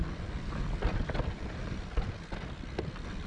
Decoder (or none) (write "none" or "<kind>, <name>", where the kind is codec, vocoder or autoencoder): vocoder, BigVGAN v2